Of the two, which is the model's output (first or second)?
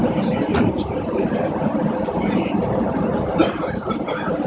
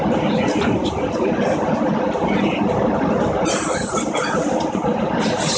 first